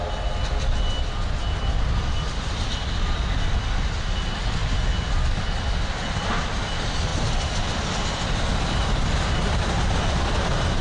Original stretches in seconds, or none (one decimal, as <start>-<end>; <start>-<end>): 0.0-10.8